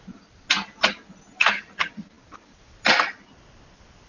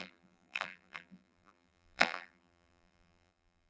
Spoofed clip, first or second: second